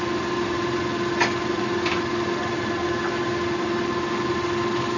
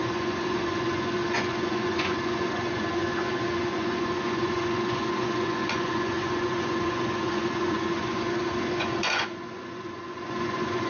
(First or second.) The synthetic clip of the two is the second